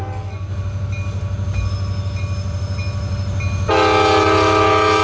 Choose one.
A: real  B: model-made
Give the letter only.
A